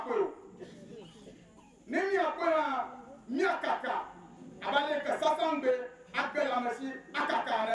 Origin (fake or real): real